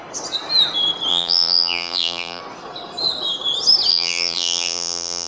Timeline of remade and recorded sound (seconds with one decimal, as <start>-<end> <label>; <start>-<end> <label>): 0.0-1.1 recorded; 1.1-2.4 remade; 2.4-3.9 recorded; 3.9-5.3 remade